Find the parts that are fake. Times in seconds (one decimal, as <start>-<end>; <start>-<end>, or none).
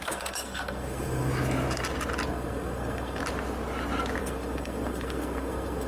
0.0-1.3; 2.3-3.2; 4.2-5.9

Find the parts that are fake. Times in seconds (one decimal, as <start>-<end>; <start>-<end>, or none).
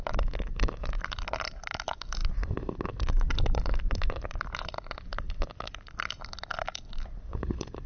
none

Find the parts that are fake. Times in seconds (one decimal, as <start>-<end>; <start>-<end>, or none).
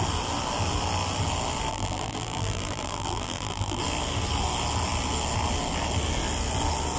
1.7-3.8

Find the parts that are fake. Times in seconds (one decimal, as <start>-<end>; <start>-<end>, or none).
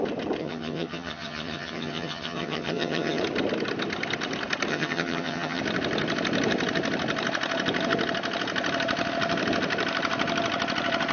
0.4-3.2; 4.7-5.6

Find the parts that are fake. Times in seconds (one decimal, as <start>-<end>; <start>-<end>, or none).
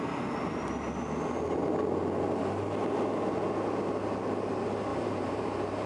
4.9-5.9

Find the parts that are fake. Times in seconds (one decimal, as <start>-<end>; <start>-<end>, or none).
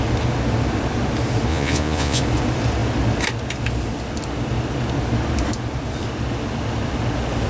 1.5-2.2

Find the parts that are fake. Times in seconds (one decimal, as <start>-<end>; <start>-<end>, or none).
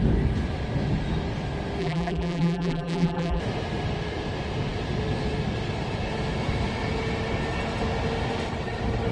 1.8-3.4